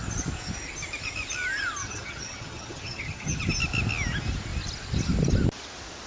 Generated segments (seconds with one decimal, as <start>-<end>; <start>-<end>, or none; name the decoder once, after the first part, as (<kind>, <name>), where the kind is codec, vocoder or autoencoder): 1.8-3.5 (vocoder, HiFi-GAN)